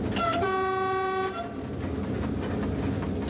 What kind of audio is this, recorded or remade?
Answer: recorded